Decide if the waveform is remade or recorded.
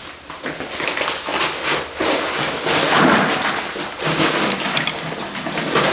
recorded